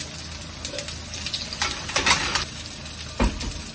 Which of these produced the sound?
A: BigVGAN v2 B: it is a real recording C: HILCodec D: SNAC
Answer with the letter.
B